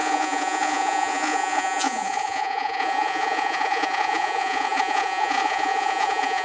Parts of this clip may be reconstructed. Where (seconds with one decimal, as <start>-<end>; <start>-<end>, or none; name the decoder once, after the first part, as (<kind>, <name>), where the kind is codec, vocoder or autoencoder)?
0.0-6.4 (vocoder, Vocos)